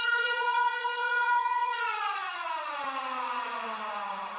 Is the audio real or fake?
fake